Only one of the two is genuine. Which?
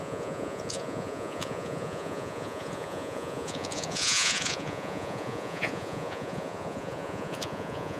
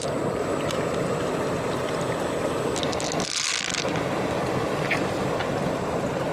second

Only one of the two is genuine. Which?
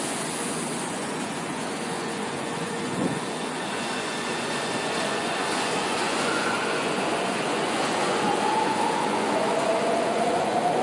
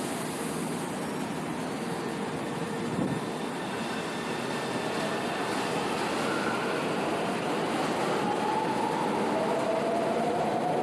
second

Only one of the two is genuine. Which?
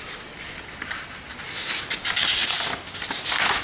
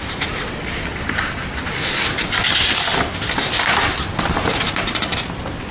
first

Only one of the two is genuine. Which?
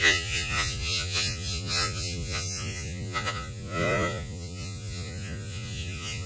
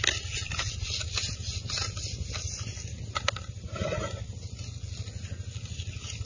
second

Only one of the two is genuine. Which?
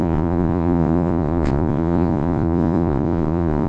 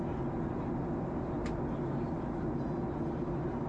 second